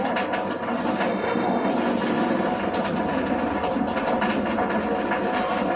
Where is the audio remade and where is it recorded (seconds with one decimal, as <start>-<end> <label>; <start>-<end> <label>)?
0.0-1.1 recorded; 1.1-1.7 remade; 1.7-5.8 recorded